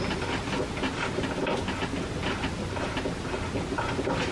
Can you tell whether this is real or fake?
real